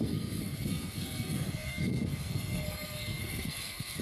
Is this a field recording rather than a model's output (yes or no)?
no